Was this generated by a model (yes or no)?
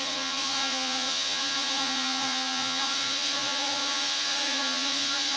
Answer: yes